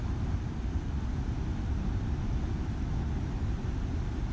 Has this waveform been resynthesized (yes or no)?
no